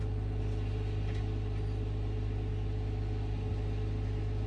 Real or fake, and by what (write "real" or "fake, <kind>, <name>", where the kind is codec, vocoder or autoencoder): real